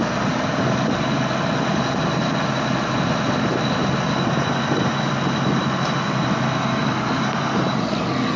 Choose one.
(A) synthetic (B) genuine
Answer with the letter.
B